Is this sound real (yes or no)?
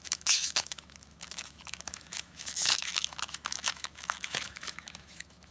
no